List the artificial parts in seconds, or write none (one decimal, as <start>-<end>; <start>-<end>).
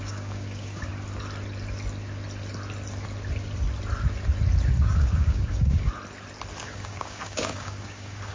0.0-0.9; 4.8-5.9; 6.6-8.3